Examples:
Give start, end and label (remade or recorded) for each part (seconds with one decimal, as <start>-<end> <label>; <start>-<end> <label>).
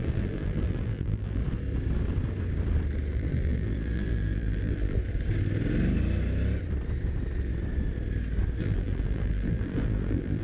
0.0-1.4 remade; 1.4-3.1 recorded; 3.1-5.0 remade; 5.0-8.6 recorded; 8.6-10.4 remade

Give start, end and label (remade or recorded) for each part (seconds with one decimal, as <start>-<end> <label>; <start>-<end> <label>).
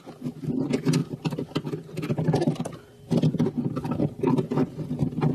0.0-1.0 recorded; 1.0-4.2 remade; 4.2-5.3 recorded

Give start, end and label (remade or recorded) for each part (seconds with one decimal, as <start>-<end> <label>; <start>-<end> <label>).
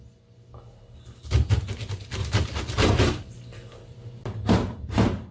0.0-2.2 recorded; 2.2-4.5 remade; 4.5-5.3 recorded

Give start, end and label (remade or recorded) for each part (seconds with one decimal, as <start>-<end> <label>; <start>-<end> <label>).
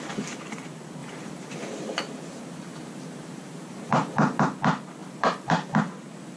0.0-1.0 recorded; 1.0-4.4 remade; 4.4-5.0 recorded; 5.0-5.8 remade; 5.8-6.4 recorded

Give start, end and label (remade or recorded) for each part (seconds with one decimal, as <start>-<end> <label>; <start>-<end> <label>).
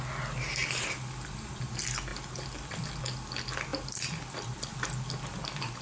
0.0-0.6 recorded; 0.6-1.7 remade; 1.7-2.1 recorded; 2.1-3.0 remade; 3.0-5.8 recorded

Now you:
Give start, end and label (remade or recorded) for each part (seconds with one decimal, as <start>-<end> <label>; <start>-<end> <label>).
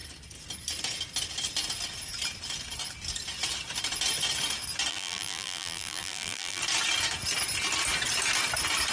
0.0-4.9 recorded; 4.9-6.6 remade; 6.6-8.9 recorded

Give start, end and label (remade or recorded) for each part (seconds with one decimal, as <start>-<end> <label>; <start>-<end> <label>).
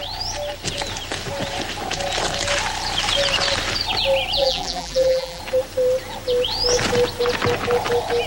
0.0-4.4 recorded; 4.4-5.4 remade; 5.4-8.3 recorded